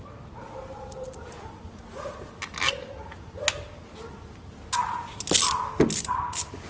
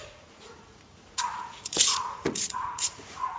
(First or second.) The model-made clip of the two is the second